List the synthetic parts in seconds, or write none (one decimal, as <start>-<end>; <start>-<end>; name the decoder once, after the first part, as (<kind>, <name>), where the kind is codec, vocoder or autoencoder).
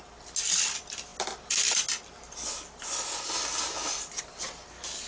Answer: none